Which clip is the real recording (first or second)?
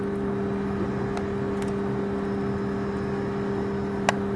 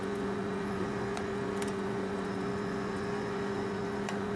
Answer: first